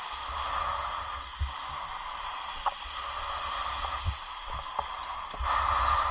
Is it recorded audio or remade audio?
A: recorded